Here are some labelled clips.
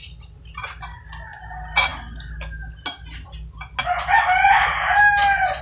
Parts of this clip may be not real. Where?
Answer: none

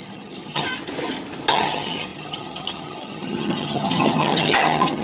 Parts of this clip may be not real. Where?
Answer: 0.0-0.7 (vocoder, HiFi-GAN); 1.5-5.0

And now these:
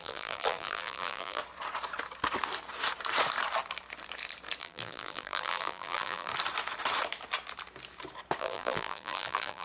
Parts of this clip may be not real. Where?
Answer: 0.0-1.4 (vocoder, BigVGAN v2); 4.6-6.3; 8.4-9.6